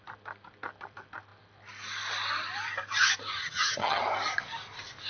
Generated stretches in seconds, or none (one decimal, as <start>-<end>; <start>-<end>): 3.4-4.0